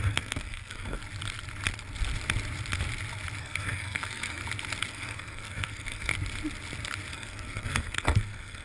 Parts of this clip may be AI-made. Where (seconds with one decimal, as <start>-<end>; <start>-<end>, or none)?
0.0-1.0; 3.4-4.4; 4.9-6.1; 7.1-8.6